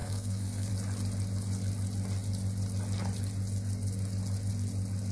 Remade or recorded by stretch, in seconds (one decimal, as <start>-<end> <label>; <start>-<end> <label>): 0.0-0.7 remade; 0.7-5.1 recorded